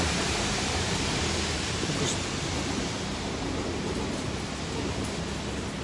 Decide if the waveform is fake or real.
real